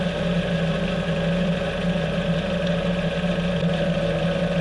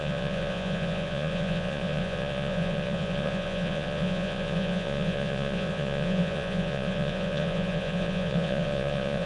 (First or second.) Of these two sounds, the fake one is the second